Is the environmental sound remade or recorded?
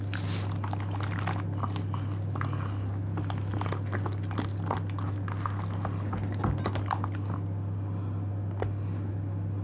recorded